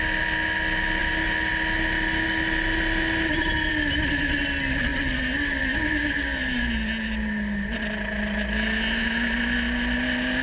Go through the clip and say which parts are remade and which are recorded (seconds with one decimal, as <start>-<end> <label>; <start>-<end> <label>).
0.0-10.4 recorded